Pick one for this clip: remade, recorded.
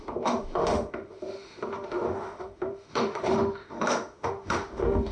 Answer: remade